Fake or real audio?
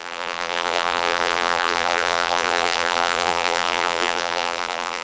fake